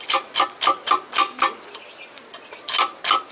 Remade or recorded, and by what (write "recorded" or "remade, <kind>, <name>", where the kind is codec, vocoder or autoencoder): recorded